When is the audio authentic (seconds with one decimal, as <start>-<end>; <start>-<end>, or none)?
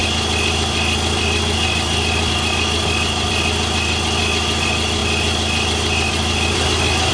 0.0-7.1